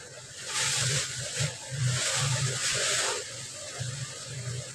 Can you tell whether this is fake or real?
fake